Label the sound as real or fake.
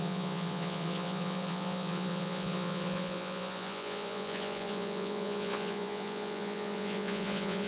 fake